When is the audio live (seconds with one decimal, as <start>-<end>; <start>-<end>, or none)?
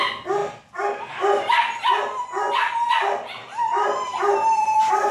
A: 0.0-3.4